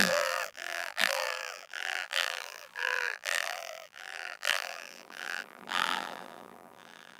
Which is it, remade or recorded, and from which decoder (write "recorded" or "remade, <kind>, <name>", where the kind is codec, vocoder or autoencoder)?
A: remade, vocoder, BigVGAN v2